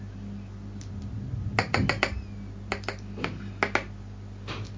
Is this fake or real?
real